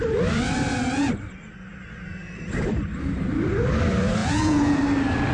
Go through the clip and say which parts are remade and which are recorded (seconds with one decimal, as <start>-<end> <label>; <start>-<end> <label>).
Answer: 0.0-4.2 recorded; 4.2-4.8 remade; 4.8-5.3 recorded

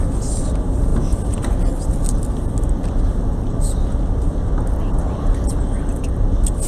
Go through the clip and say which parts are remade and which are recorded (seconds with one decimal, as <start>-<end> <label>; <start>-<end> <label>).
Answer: 0.0-6.7 recorded

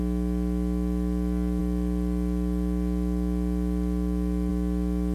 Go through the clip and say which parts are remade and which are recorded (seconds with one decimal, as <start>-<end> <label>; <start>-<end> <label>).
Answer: 0.0-5.1 recorded

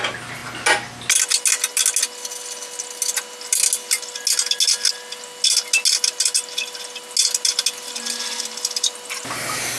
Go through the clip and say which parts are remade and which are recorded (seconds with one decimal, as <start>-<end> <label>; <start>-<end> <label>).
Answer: 0.0-9.8 recorded

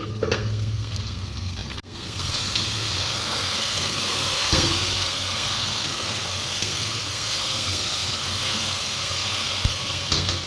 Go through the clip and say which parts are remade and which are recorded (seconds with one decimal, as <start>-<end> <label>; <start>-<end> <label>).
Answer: 0.0-10.5 remade

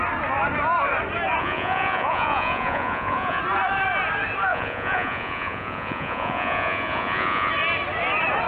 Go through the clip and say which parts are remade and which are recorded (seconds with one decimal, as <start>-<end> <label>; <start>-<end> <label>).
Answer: 0.0-1.4 recorded; 1.4-3.4 remade; 3.4-4.5 recorded; 4.5-7.5 remade; 7.5-8.5 recorded

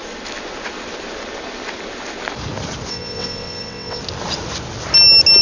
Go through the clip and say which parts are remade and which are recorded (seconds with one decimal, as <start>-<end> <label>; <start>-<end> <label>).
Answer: 0.0-2.9 recorded; 2.9-4.0 remade; 4.0-5.4 recorded